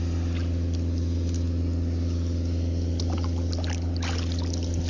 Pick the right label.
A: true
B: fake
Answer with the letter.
A